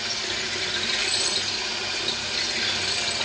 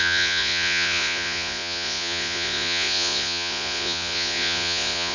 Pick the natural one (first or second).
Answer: first